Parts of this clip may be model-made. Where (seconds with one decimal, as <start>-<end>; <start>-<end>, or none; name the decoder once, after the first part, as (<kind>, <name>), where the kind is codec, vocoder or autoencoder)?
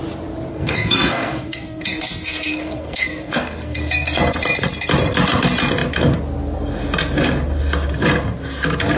0.5-4.2 (codec, SNAC)